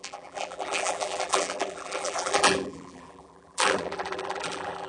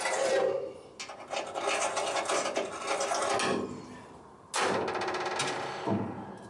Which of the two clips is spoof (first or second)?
first